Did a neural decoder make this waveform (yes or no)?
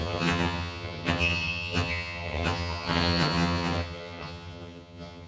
yes